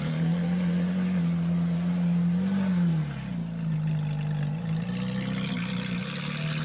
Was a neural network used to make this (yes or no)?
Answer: no